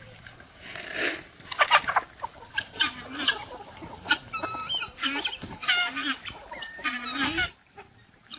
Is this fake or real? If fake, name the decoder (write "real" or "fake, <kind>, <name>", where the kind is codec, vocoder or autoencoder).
fake, vocoder, BigVGAN v2